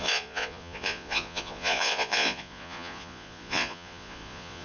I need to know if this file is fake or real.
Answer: fake